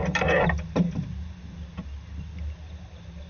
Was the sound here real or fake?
real